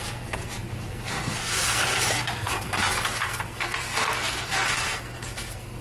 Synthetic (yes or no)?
yes